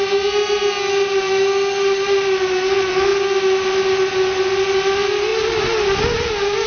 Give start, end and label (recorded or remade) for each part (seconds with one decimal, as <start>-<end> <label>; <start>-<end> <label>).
0.0-6.7 recorded